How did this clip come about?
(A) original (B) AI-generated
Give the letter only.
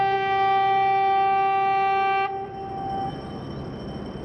A